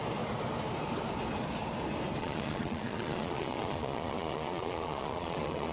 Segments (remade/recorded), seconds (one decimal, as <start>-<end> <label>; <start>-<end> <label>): 0.0-2.2 recorded; 2.2-5.7 remade

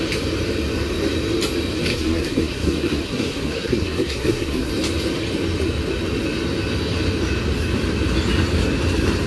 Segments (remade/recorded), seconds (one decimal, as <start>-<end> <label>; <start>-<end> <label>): 0.0-1.9 recorded; 1.9-4.7 remade; 4.7-9.3 recorded

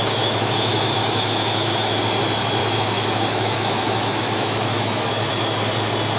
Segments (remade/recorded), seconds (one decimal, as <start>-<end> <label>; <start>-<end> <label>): 0.0-2.0 remade; 2.0-2.6 recorded; 2.6-5.3 remade; 5.3-6.2 recorded

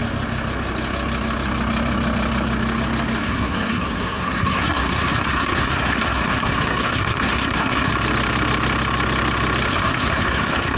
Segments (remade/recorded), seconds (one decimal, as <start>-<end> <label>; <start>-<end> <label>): 0.0-3.2 recorded; 3.2-7.9 remade; 7.9-9.7 recorded; 9.7-10.8 remade

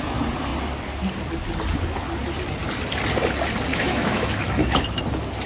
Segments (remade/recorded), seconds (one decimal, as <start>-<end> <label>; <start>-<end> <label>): 0.0-3.7 recorded; 3.7-5.0 remade; 5.0-5.5 recorded

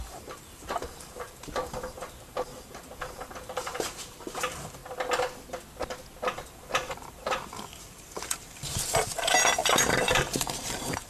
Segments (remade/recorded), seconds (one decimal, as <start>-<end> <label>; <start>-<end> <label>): 0.0-4.8 remade; 4.8-6.5 recorded; 6.5-11.1 remade

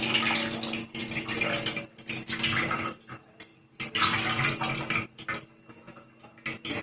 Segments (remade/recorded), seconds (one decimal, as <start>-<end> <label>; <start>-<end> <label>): 0.0-6.8 recorded

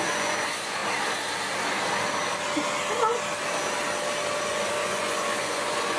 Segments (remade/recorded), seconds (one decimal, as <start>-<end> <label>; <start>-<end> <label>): 0.0-0.8 remade; 0.8-4.4 recorded; 4.4-6.0 remade